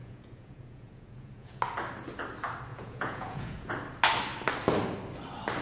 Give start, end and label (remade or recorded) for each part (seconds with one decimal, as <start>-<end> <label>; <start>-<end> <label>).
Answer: 0.0-1.6 remade; 1.6-2.7 recorded; 2.7-3.7 remade; 3.7-5.6 recorded

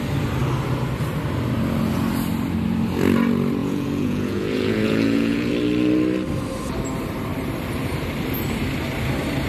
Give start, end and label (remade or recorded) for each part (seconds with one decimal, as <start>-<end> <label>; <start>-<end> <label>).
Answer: 0.0-3.6 recorded; 3.6-5.5 remade; 5.5-9.5 recorded

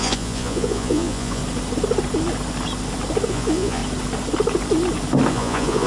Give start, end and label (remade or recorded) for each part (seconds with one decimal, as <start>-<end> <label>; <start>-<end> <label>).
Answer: 0.0-1.4 remade; 1.4-3.3 recorded; 3.3-3.8 remade; 3.8-5.3 recorded; 5.3-5.9 remade

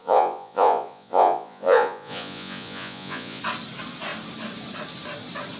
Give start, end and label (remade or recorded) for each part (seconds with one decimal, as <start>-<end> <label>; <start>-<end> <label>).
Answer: 0.0-3.4 remade; 3.4-5.6 recorded

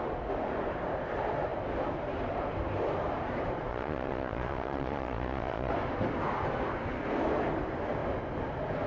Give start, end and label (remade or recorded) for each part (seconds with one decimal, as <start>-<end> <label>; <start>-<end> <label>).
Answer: 0.0-3.7 recorded; 3.7-5.7 remade; 5.7-8.9 recorded

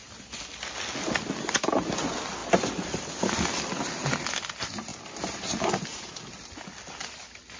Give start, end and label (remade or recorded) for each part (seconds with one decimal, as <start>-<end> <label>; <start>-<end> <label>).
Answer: 0.0-7.6 recorded

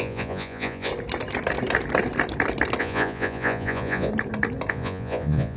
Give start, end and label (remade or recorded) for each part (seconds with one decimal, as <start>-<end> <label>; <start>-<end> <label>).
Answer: 0.0-0.9 remade; 0.9-2.8 recorded; 2.8-4.1 remade; 4.1-4.7 recorded; 4.7-5.6 remade